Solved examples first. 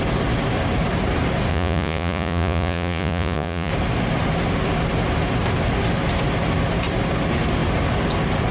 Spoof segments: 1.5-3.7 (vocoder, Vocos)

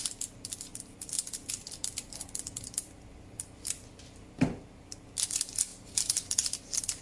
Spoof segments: 0.0-0.7 (vocoder, BigVGAN v2); 1.5-7.0

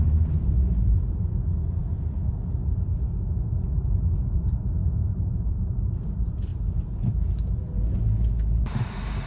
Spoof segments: 0.0-1.8 (vocoder, BigVGAN v2); 3.8-6.5; 8.3-9.3

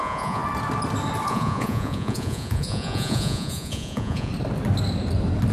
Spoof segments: 0.0-0.4 (vocoder, Vocos); 1.3-4.3

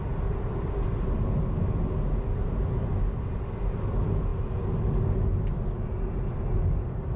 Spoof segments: none

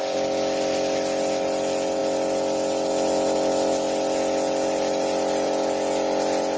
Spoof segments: none

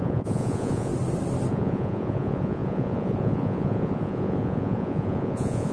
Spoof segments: 0.0-0.9 (vocoder, Vocos); 1.5-5.7

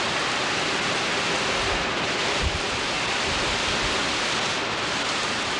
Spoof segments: none